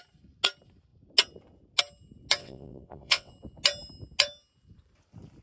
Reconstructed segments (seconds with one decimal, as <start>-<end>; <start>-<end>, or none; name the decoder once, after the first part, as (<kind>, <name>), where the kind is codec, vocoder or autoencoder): 2.4-3.3 (vocoder, WaveNeXt)